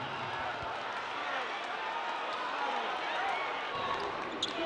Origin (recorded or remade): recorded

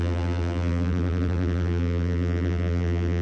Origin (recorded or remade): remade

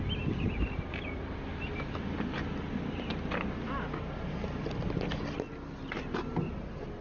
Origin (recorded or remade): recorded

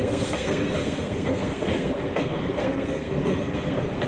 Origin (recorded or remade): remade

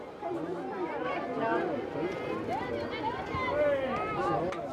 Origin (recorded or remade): recorded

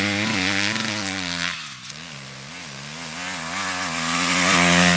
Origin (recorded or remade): recorded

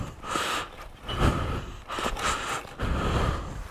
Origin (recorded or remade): remade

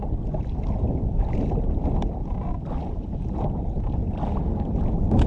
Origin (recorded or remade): recorded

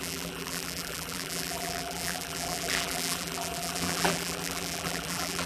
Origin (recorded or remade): remade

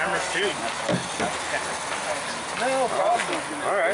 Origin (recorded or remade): recorded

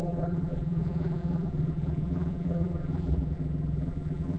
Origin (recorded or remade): remade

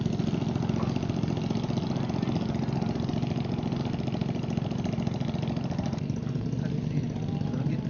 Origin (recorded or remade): recorded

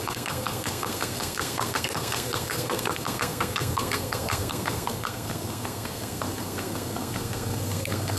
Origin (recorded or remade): remade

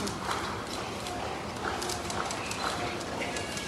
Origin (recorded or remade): remade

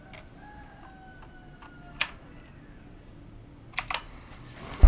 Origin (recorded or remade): recorded